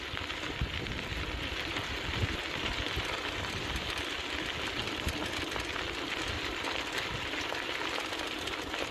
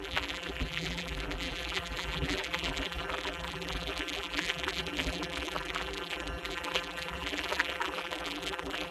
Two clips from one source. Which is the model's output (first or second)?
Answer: second